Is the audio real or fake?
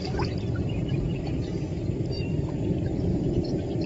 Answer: fake